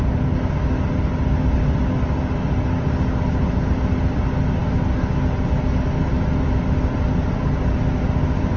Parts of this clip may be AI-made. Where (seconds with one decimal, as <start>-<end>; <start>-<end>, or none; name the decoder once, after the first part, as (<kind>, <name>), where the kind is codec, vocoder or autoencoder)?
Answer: none